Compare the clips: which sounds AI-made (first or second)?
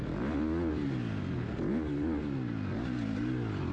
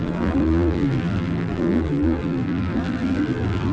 second